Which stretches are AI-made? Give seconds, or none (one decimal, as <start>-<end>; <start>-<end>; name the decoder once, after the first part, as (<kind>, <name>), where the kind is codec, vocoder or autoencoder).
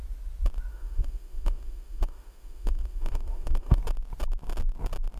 0.7-3.8 (autoencoder, DAC-VAE)